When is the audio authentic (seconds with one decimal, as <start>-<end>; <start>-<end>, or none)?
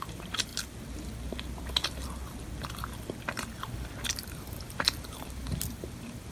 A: 0.5-4.3